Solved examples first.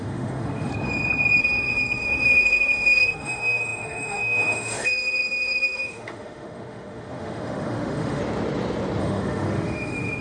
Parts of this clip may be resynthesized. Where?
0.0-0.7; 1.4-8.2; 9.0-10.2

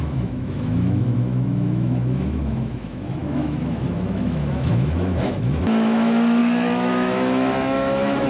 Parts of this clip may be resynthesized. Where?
0.0-8.3